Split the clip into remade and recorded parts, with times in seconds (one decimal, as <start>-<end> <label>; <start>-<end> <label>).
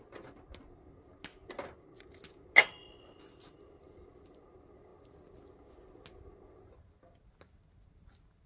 0.0-8.5 recorded